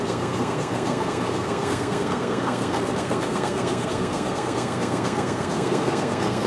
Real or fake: fake